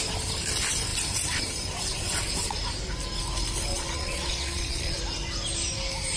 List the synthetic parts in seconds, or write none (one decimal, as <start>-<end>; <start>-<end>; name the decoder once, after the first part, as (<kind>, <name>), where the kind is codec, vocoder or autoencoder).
3.7-5.0 (vocoder, Vocos)